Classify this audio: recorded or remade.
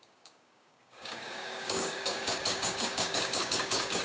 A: remade